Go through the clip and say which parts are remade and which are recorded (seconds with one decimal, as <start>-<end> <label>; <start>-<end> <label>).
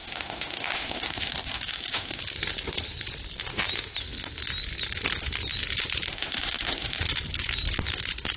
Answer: 0.0-2.2 remade; 2.2-6.1 recorded; 6.1-7.0 remade; 7.0-8.4 recorded